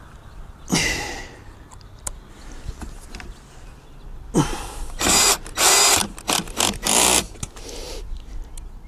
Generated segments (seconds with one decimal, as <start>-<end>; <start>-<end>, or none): none

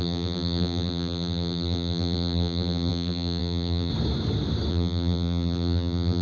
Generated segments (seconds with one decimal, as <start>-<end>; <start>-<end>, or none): 0.0-3.9; 4.7-6.2

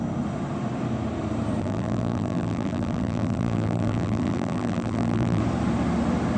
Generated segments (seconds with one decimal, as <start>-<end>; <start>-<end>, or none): 1.6-5.4

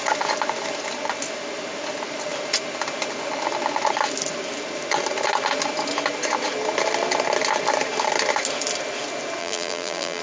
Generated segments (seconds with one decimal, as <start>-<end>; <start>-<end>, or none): 9.4-10.2

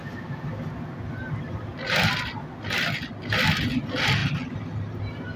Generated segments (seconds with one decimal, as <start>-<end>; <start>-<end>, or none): none

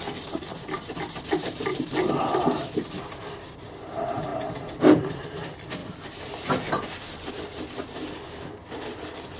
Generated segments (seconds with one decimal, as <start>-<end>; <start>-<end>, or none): 0.0-2.6; 3.5-4.3; 5.1-5.8; 7.3-9.4

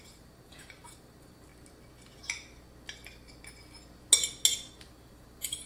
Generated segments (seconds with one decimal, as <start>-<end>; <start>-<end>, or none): 0.0-1.5; 4.9-5.7

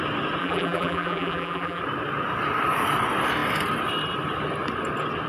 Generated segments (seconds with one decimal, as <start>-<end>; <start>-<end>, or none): 0.4-1.8